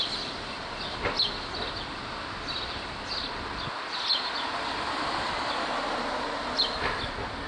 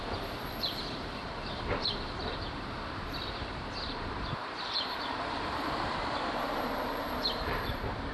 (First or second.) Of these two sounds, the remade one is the second